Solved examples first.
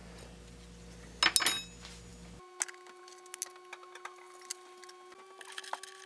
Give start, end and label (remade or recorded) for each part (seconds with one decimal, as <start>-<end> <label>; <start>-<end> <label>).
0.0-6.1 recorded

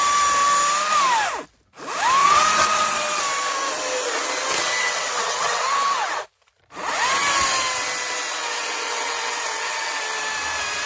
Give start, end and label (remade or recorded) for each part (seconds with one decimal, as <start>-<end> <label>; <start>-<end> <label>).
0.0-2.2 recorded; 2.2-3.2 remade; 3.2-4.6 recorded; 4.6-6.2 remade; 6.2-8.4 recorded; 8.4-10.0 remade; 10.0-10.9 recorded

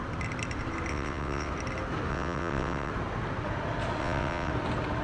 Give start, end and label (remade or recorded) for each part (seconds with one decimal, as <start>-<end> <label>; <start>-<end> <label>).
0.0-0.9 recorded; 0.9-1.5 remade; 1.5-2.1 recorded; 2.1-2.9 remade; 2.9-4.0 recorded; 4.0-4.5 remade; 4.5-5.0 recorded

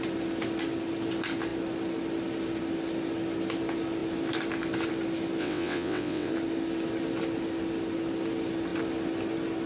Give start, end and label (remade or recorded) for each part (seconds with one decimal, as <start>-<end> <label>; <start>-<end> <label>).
0.0-5.4 recorded; 5.4-6.3 remade; 6.3-9.7 recorded

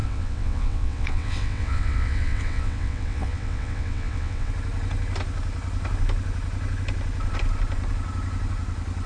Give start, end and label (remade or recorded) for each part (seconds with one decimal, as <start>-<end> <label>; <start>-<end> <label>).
0.0-4.5 remade; 4.5-9.1 recorded

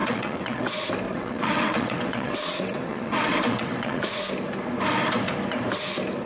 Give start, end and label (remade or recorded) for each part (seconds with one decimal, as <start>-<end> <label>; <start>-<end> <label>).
0.0-0.7 remade; 0.7-1.1 recorded; 1.1-4.1 remade; 4.1-6.3 recorded

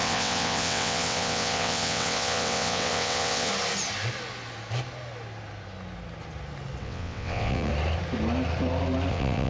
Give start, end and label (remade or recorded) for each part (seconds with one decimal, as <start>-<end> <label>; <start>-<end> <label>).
0.0-3.5 remade; 3.5-6.8 recorded; 6.8-7.7 remade; 7.7-9.1 recorded; 9.1-9.5 remade

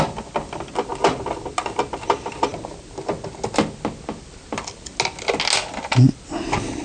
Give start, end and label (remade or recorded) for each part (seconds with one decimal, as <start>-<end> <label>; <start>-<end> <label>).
0.0-6.8 recorded